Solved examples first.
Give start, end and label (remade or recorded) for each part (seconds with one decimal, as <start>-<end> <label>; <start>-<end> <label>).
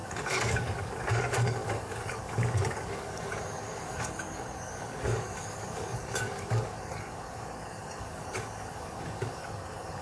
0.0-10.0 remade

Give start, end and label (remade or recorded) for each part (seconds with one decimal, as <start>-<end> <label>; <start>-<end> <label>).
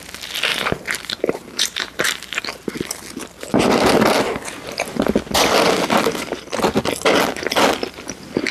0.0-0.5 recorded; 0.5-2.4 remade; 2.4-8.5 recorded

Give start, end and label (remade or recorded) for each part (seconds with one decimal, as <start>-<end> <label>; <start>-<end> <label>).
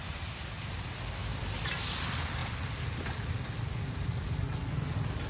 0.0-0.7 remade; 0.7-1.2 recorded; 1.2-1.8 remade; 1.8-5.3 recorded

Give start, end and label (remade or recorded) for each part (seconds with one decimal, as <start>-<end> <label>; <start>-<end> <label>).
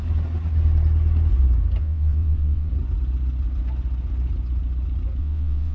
0.0-1.8 recorded; 1.8-2.7 remade; 2.7-5.2 recorded; 5.2-5.7 remade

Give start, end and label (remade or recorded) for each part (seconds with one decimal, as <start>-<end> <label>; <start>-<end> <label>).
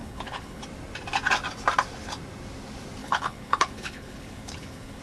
0.0-0.6 remade; 0.6-3.0 recorded; 3.0-5.0 remade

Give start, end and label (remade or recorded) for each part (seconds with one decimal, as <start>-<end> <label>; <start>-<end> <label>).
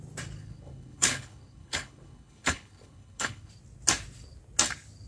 0.0-0.4 recorded; 0.4-3.5 remade; 3.5-5.1 recorded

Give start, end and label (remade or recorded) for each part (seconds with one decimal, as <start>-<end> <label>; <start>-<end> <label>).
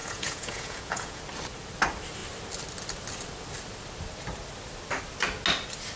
0.0-1.2 remade; 1.2-6.0 recorded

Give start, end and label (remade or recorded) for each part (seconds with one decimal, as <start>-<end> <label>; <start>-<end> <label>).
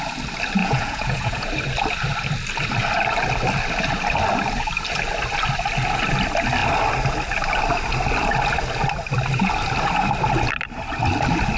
0.0-0.6 recorded; 0.6-1.5 remade; 1.5-11.6 recorded